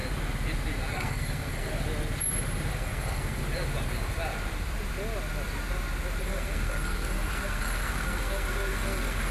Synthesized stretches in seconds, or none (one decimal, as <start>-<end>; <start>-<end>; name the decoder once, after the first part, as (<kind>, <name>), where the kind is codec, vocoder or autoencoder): 0.9-1.7 (codec, SNAC); 2.7-3.4; 6.2-9.3

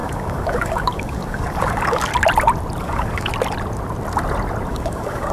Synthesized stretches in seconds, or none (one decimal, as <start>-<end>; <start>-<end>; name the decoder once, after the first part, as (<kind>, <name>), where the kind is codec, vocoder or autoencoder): 0.0-2.1 (codec, DAC); 2.8-3.3; 4.7-5.3

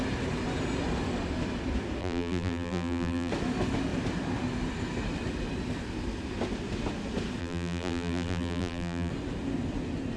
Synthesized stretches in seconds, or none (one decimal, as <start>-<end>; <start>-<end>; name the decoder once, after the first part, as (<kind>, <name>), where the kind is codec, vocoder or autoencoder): 2.0-3.3 (vocoder, BigVGAN v2); 7.4-9.1